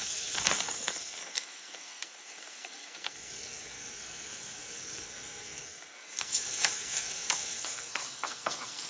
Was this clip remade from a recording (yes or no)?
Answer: yes